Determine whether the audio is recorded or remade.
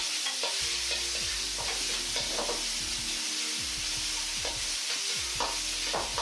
recorded